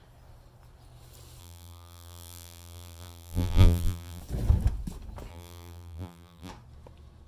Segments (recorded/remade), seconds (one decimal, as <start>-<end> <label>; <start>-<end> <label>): 0.0-1.4 recorded; 1.4-4.2 remade; 4.2-5.3 recorded; 5.3-6.5 remade; 6.5-7.3 recorded